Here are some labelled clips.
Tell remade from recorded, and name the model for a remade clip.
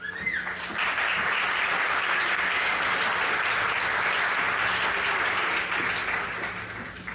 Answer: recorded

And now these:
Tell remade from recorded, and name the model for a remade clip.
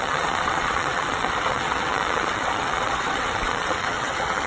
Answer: remade, vocoder, WaveNeXt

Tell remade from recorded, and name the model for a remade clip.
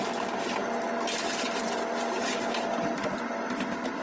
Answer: recorded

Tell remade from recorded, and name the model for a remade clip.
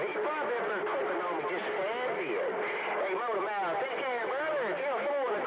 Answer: recorded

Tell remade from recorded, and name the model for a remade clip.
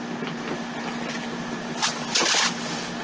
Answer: recorded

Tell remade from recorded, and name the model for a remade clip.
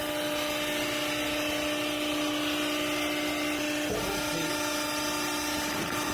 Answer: recorded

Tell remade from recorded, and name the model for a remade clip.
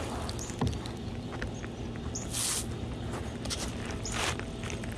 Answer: recorded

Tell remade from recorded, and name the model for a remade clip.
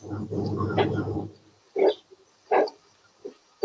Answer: recorded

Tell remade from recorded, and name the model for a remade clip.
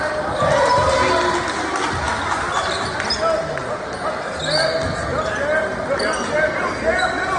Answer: recorded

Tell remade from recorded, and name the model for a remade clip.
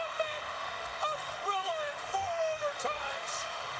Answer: remade, autoencoder, DAC-VAE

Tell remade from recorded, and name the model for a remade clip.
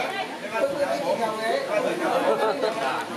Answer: recorded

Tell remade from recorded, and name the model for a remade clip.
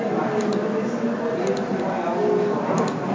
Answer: recorded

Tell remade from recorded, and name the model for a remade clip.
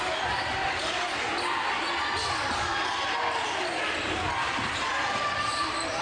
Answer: recorded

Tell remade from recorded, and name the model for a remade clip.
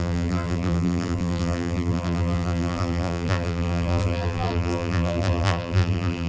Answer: remade, vocoder, BigVGAN v2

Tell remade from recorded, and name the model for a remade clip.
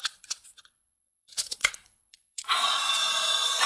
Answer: remade, vocoder, Vocos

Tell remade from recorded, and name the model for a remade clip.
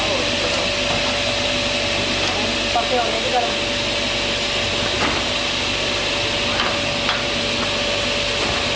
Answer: recorded